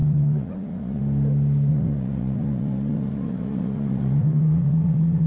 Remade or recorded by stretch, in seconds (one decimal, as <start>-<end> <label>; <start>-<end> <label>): 0.0-1.0 remade; 1.0-1.7 recorded; 1.7-5.3 remade